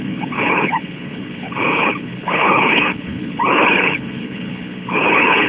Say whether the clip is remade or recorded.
remade